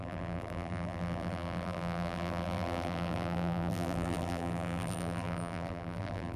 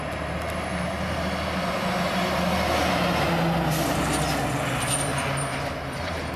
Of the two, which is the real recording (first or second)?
second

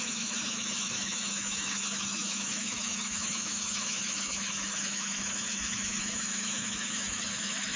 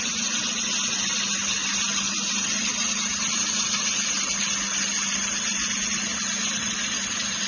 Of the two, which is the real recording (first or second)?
second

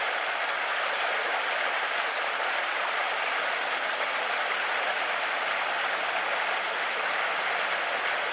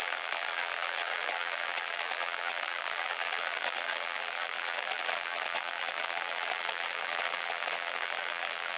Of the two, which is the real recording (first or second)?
first